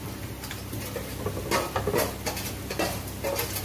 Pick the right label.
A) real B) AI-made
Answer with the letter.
A